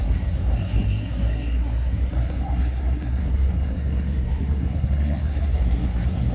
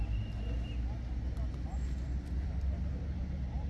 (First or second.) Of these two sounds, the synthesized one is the first